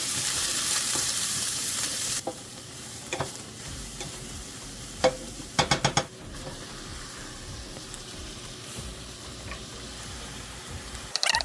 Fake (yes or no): yes